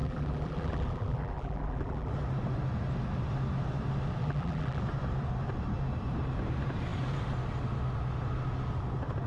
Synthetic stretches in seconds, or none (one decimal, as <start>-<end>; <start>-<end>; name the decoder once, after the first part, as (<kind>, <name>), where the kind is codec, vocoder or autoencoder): 0.0-2.1 (vocoder, BigVGAN v2); 4.2-4.8